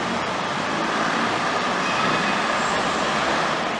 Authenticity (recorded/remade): remade